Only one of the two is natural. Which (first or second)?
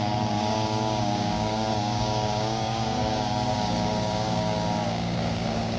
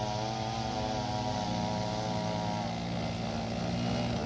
second